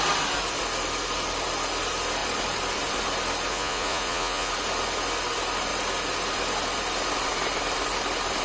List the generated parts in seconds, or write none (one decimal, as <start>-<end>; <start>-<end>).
3.5-4.5